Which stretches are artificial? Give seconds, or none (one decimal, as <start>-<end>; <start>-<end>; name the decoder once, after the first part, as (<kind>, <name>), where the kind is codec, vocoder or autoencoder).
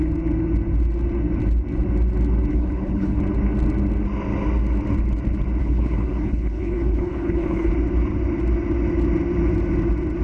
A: 2.5-3.2 (codec, HILCodec); 5.6-7.7